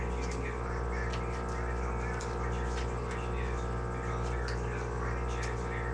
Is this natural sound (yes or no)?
yes